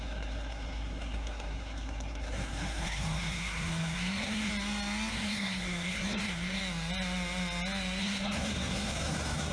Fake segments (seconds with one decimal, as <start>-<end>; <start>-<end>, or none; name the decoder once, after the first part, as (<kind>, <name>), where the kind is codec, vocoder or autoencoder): 0.0-4.5 (codec, SNAC); 5.1-6.6; 8.0-9.5